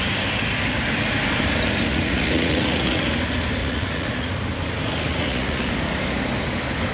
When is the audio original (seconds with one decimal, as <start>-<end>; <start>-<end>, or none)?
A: 0.0-1.9; 3.0-3.6; 4.3-5.1; 5.7-6.9